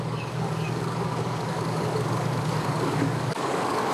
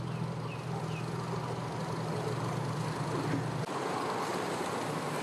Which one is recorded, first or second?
second